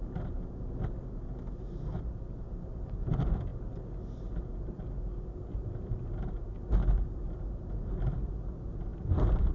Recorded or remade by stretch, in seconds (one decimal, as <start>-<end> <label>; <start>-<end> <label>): 0.0-9.5 recorded